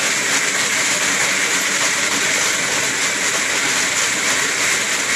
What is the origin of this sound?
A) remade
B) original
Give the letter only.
B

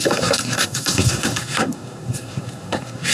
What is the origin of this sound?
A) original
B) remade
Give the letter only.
B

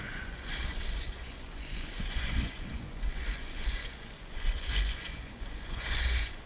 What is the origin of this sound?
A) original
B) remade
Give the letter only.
B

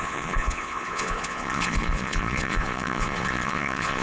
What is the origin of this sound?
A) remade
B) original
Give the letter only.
A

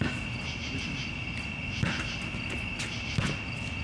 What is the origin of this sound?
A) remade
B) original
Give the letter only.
B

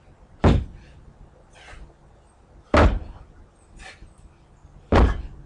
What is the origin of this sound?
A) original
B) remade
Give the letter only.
A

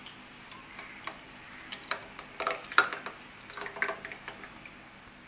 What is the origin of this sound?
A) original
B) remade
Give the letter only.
A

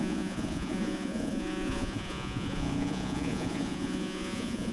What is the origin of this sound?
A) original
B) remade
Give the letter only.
B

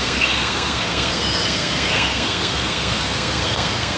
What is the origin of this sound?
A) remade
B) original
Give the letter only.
A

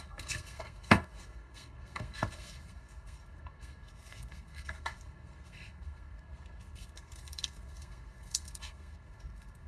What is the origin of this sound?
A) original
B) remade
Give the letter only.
B